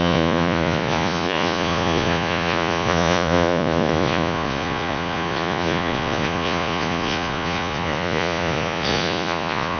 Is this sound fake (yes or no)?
yes